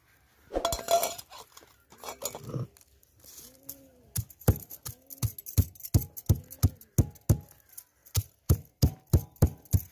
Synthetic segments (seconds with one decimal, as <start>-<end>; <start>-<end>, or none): none

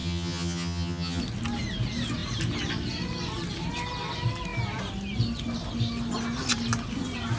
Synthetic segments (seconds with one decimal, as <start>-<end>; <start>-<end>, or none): 0.0-1.2

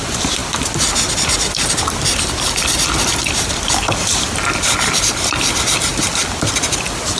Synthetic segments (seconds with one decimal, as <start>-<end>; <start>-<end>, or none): none

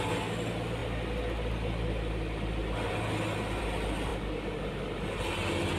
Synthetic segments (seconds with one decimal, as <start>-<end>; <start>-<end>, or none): none

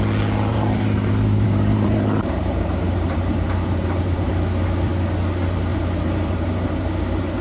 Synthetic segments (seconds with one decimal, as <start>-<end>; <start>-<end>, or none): 0.5-4.3; 5.7-6.8

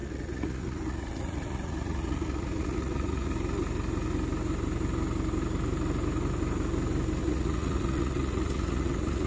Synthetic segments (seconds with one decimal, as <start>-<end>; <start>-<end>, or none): 0.0-3.3; 7.2-9.3

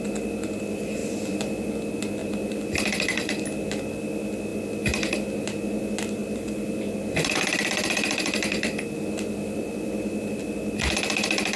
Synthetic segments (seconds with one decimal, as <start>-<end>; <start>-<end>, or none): 1.0-1.7; 2.2-3.4; 4.5-5.1; 6.2-10.4